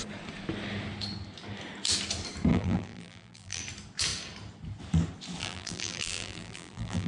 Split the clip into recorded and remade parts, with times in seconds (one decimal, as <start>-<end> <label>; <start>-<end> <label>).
0.0-2.5 recorded; 2.5-3.6 remade; 3.6-5.4 recorded; 5.4-7.1 remade